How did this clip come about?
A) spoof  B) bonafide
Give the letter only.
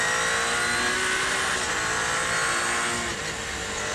B